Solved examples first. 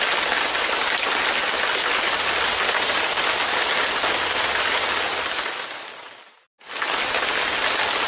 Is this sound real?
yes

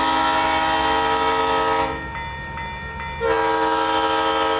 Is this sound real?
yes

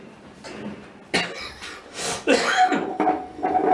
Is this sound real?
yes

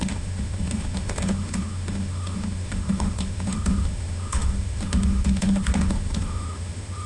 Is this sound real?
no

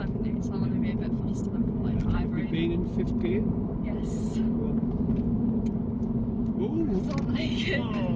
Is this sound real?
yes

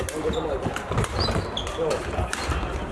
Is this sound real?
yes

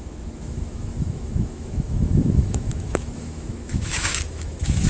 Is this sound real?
no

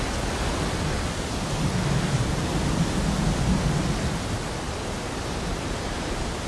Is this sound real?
yes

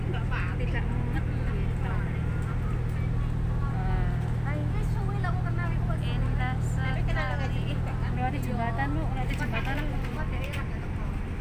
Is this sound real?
yes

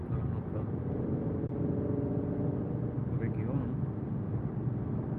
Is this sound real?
yes